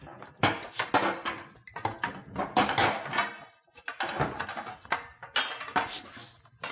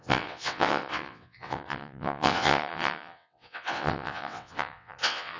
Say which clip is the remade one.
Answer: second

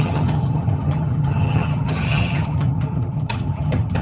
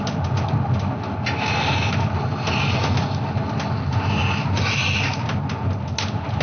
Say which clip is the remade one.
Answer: first